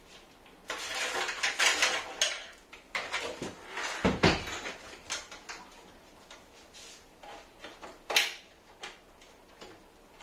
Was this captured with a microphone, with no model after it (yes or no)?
yes